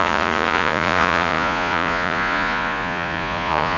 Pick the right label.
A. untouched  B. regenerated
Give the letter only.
B